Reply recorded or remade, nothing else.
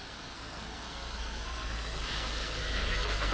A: remade